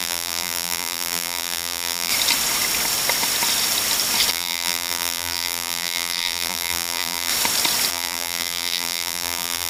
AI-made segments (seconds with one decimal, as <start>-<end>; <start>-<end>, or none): 0.0-2.1; 4.3-7.3; 7.9-9.7